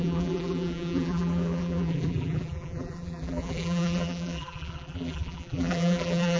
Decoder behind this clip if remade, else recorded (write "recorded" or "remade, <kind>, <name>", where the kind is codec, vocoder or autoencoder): remade, vocoder, BigVGAN v2